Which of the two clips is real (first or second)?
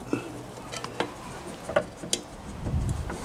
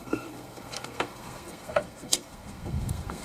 first